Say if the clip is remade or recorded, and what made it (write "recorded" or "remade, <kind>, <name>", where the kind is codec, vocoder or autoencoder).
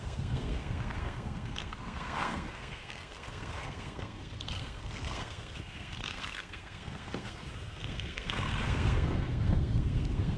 remade, codec, SNAC